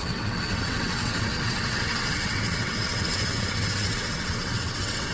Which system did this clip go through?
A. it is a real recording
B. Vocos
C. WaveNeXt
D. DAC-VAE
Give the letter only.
C